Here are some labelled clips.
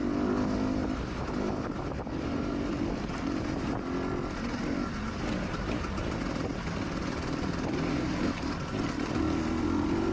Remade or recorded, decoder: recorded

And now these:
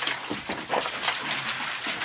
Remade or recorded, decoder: recorded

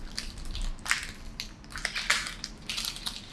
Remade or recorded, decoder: recorded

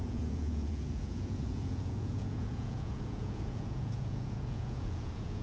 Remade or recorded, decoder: remade, vocoder, Vocos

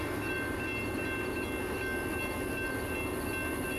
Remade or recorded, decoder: recorded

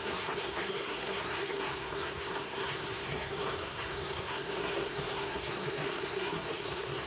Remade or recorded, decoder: remade, codec, SNAC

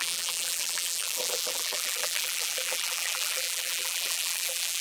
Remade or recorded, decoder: remade, vocoder, BigVGAN v2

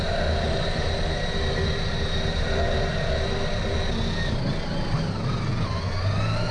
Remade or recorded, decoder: recorded